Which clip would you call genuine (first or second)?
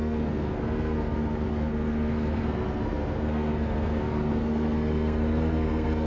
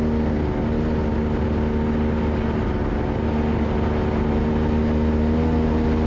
second